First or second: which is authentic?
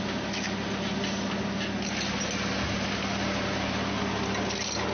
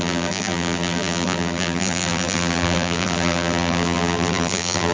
first